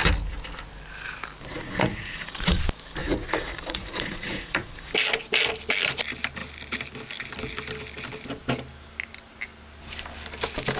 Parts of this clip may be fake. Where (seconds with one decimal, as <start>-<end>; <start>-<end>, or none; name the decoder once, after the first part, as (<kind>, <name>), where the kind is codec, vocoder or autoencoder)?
1.5-2.6 (vocoder, Vocos); 3.0-4.9

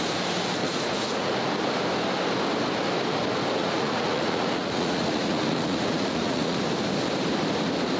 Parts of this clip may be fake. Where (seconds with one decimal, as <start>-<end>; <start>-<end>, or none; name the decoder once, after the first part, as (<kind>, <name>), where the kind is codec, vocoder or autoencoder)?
0.6-1.3 (vocoder, Vocos); 3.6-6.6

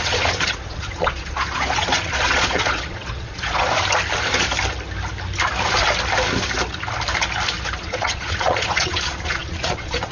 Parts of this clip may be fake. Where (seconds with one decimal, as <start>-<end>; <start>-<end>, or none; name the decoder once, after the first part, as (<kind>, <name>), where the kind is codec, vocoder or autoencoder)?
0.0-3.7 (vocoder, Vocos); 7.8-10.1

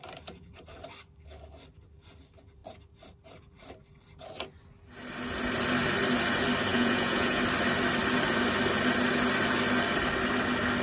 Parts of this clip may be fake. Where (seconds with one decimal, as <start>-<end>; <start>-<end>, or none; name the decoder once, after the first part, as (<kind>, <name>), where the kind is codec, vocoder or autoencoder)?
6.7-7.4 (vocoder, Vocos)